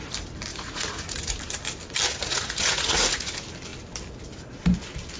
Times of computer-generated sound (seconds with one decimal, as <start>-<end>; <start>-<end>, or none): 0.5-1.3; 2.1-3.3